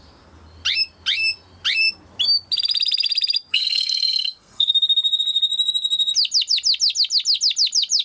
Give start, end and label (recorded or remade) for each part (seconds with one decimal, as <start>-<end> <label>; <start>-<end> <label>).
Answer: 0.0-3.5 recorded; 3.5-4.7 remade; 4.7-8.0 recorded